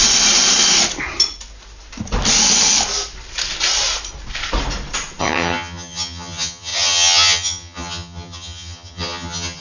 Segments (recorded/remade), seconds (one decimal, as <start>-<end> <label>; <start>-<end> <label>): 0.0-5.2 recorded; 5.2-9.6 remade